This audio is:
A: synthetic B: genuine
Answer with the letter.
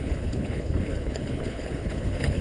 A